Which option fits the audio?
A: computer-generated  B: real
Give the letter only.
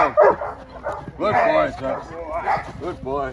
B